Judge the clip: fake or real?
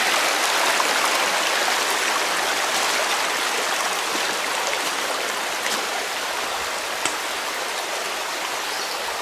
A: real